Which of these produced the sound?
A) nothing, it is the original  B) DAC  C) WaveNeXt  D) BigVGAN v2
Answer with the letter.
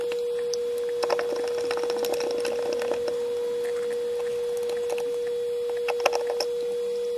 A